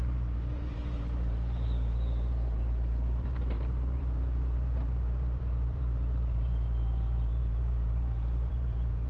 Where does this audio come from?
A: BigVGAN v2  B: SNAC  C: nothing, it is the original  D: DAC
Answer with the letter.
A